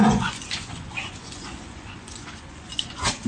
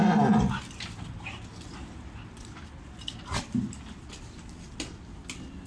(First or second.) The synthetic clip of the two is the first